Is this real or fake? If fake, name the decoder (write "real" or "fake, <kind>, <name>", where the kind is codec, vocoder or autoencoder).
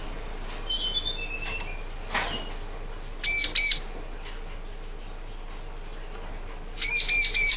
real